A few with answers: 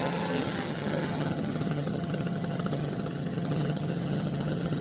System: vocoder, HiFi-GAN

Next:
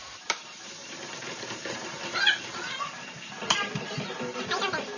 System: vocoder, BigVGAN v2